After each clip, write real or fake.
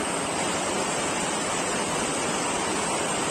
fake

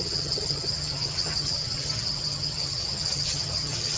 fake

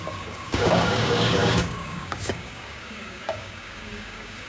fake